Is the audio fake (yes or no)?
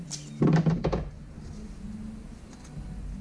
no